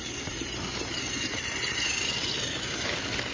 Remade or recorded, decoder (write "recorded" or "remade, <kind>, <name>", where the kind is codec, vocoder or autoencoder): recorded